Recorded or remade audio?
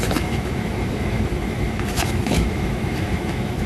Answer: remade